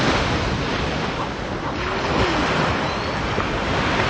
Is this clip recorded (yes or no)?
yes